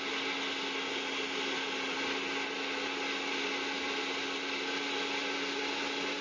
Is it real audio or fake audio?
real